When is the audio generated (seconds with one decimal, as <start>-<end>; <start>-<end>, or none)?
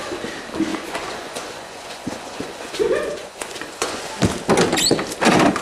0.7-4.1